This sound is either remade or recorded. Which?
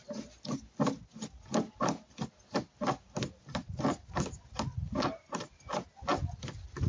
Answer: recorded